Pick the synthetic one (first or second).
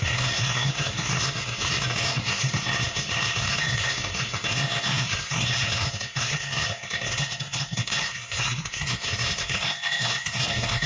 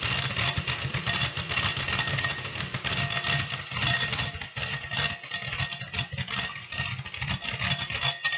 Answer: first